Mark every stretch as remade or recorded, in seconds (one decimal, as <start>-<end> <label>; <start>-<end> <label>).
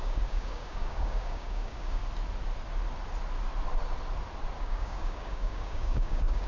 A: 0.0-2.0 remade; 2.0-4.6 recorded; 4.6-6.5 remade